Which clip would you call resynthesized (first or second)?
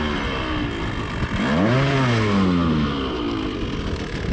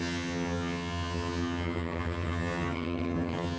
second